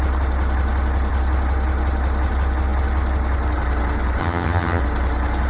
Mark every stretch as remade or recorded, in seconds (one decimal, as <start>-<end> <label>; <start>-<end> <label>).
0.0-4.2 recorded; 4.2-4.8 remade; 4.8-5.5 recorded